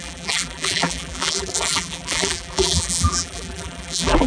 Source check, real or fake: fake